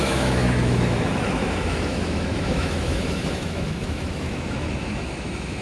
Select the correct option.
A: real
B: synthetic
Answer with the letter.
B